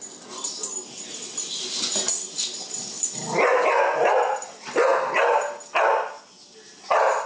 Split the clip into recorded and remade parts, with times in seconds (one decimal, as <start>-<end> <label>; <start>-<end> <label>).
0.0-7.3 recorded

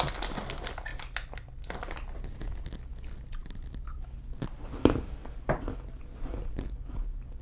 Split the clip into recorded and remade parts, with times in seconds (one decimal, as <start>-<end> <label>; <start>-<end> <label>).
0.0-0.9 recorded; 0.9-1.9 remade; 1.9-7.4 recorded